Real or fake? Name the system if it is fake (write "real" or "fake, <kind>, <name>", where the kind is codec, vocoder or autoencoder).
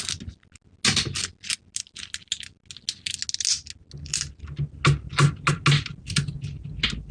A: real